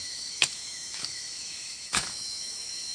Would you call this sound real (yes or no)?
no